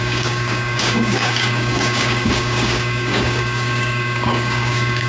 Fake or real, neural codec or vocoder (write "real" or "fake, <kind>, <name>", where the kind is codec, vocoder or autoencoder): fake, codec, DAC